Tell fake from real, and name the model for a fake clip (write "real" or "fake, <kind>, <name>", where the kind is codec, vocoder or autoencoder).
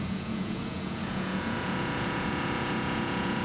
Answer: fake, vocoder, Vocos